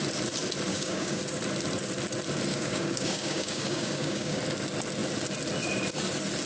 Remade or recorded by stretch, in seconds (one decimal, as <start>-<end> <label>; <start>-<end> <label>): 0.0-0.7 recorded; 0.7-1.2 remade; 1.2-2.5 recorded; 2.5-4.4 remade; 4.4-6.5 recorded